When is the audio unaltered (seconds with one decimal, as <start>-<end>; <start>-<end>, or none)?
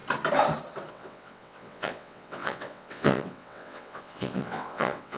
0.0-0.9